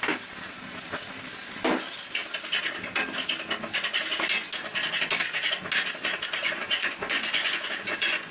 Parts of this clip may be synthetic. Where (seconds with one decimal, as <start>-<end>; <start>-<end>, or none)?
6.4-8.3